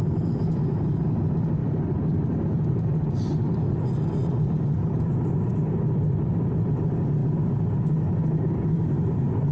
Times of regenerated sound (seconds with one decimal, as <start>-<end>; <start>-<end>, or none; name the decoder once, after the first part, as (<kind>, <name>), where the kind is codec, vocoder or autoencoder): 0.0-9.5 (vocoder, BigVGAN v2)